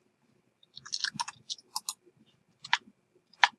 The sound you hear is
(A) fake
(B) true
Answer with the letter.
B